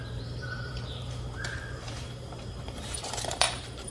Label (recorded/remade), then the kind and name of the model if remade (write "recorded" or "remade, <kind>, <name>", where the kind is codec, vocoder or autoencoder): remade, vocoder, BigVGAN v2